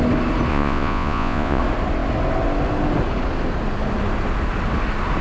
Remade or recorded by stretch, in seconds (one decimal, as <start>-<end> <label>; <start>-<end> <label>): 0.0-0.5 recorded; 0.5-1.6 remade; 1.6-5.2 recorded